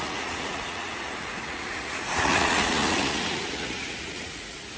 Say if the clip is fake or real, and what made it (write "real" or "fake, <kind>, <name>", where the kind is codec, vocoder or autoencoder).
fake, vocoder, Vocos